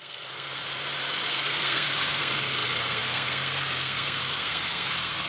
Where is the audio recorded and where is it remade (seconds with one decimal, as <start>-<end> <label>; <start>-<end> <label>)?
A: 0.0-0.6 remade; 0.6-1.3 recorded; 1.3-5.3 remade